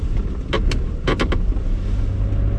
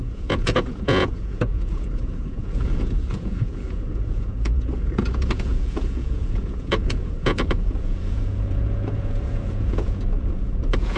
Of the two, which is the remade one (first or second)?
second